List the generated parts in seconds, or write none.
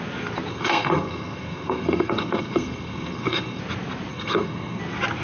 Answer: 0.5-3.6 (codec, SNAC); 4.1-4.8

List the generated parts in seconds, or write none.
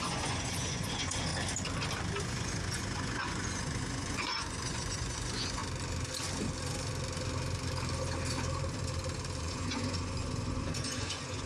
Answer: 0.0-1.3 (vocoder, Vocos); 2.2-5.6; 9.4-11.5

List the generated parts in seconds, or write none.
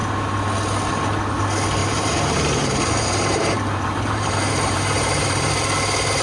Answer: 1.8-5.5 (vocoder, BigVGAN v2)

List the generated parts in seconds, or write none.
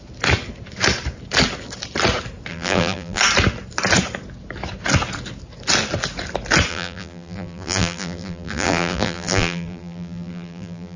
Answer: 2.5-3.2 (vocoder, BigVGAN v2); 6.7-11.0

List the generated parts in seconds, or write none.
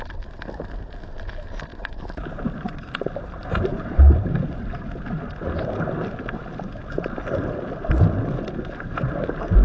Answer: 1.7-4.8 (vocoder, BigVGAN v2)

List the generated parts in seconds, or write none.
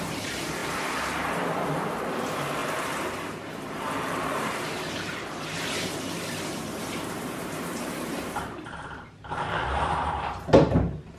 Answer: 0.0-11.2 (vocoder, BigVGAN v2)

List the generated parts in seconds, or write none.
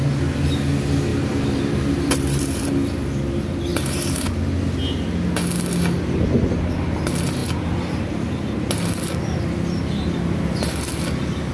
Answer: 1.1-2.6 (vocoder, BigVGAN v2); 3.7-4.3; 7.4-8.1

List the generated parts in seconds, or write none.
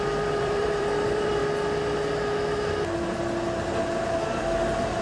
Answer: 0.0-1.4 (vocoder, BigVGAN v2); 4.4-5.0